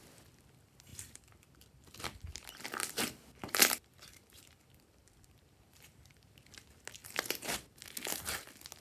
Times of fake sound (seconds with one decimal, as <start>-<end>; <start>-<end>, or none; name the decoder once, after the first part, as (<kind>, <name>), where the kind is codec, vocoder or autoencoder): 0.9-2.3 (vocoder, BigVGAN v2); 2.8-6.4; 7.0-7.8